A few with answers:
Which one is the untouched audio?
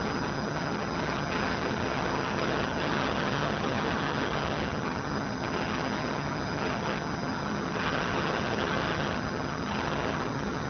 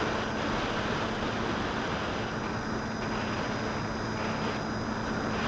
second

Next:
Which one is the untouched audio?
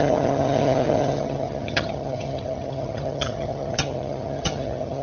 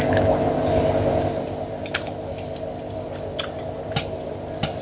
second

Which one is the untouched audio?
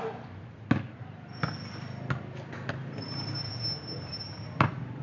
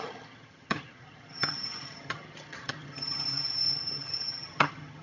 first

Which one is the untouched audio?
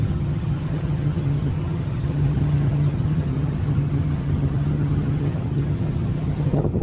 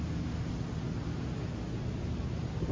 second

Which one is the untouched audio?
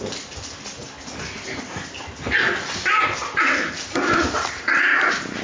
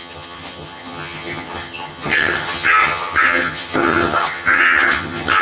first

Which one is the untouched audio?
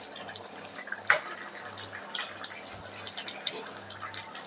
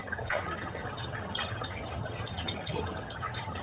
first